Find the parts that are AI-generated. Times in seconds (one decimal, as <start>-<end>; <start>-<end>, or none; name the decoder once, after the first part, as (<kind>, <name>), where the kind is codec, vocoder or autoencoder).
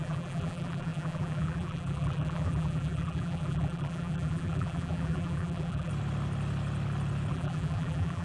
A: 0.0-5.9 (vocoder, BigVGAN v2); 7.3-8.2